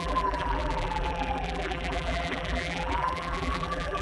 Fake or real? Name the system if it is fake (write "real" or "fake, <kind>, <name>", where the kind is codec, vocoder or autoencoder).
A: fake, vocoder, BigVGAN v2